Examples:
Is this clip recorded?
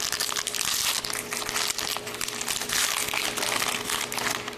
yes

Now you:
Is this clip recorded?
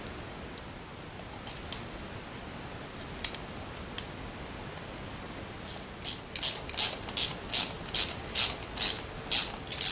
yes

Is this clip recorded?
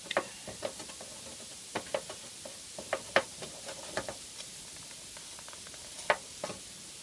yes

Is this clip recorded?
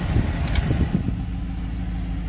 yes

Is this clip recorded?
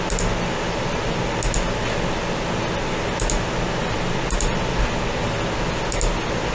yes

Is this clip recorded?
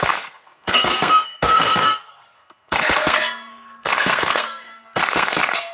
no